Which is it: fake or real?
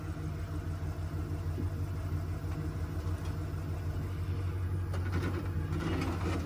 real